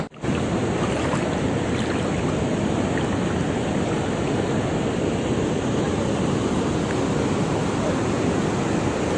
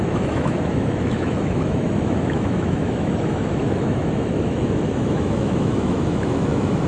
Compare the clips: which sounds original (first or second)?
first